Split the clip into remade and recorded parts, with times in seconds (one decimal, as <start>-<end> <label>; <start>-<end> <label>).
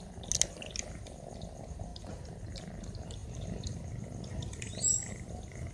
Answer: 0.0-1.9 recorded; 1.9-2.6 remade; 2.6-5.7 recorded